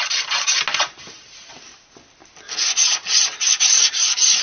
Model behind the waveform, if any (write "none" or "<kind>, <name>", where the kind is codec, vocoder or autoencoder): none